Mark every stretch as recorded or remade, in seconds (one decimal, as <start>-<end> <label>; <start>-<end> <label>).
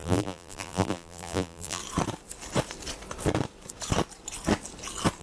0.0-1.8 remade; 1.8-5.2 recorded